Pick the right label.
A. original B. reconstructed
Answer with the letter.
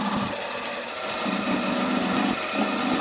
A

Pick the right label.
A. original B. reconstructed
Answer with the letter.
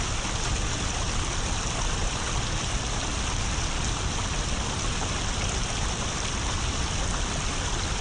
A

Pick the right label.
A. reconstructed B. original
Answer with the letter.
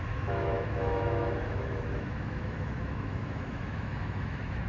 A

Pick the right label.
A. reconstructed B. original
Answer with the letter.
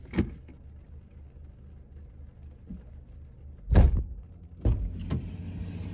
B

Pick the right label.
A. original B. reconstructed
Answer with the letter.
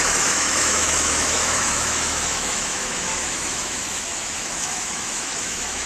B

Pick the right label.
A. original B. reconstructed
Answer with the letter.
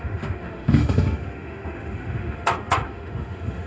B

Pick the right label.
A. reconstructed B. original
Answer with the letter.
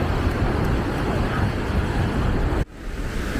B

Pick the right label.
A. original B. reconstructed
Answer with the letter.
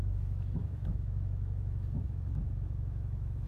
B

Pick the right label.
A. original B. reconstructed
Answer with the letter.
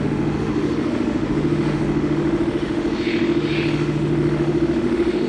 B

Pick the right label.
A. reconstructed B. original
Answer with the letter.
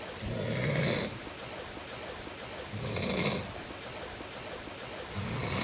B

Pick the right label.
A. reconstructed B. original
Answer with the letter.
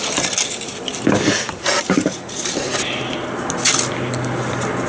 B